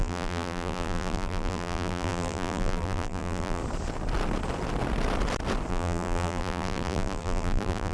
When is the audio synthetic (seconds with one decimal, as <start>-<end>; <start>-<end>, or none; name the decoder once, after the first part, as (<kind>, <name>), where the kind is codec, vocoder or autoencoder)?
0.0-3.6 (vocoder, BigVGAN v2); 5.7-7.9